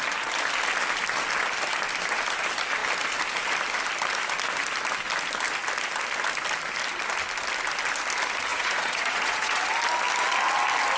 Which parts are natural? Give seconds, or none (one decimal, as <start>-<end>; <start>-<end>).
0.0-8.5; 9.6-11.0